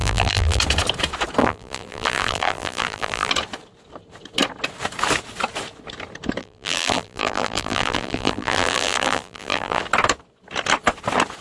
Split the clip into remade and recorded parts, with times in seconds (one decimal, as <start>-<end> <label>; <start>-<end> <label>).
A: 0.0-0.6 remade; 0.6-1.4 recorded; 1.4-3.3 remade; 3.3-6.4 recorded; 6.4-9.8 remade; 9.8-11.4 recorded

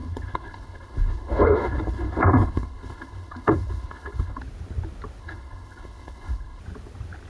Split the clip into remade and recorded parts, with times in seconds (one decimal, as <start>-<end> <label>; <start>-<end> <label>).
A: 0.0-4.4 remade; 4.4-5.2 recorded; 5.2-6.6 remade; 6.6-7.3 recorded

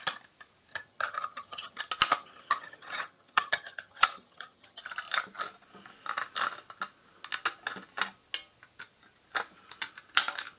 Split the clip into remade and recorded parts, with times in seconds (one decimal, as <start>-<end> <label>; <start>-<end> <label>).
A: 0.0-0.7 recorded; 0.7-1.8 remade; 1.8-2.2 recorded; 2.2-4.8 remade; 4.8-10.6 recorded

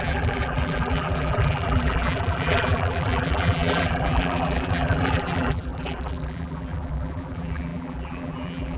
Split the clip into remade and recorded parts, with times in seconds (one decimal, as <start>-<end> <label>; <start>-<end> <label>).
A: 0.0-8.8 remade

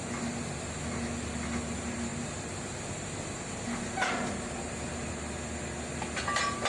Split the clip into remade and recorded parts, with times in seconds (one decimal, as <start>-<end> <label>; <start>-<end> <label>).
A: 0.0-6.7 recorded

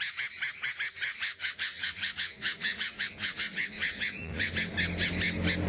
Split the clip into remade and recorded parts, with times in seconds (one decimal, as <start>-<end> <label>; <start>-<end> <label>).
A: 0.0-1.1 recorded; 1.1-4.5 remade; 4.5-5.7 recorded

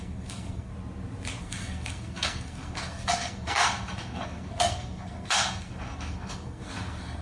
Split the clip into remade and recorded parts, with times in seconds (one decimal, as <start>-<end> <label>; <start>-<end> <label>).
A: 0.0-0.7 remade; 0.7-1.4 recorded; 1.4-7.2 remade